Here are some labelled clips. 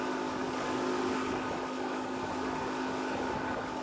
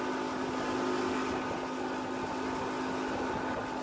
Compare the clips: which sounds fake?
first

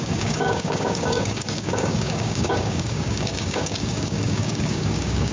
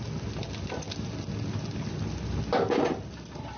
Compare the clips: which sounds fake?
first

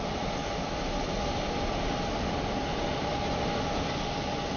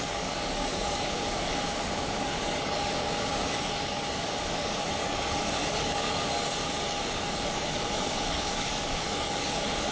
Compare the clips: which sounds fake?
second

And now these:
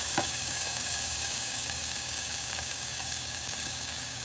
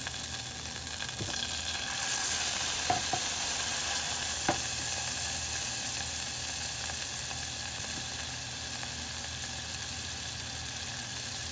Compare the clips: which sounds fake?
first